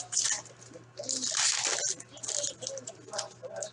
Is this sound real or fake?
real